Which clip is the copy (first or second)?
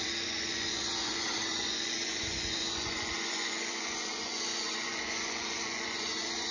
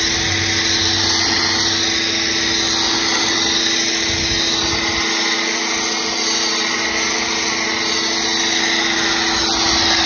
first